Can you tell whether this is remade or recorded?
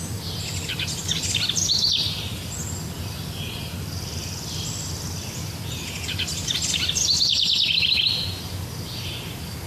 recorded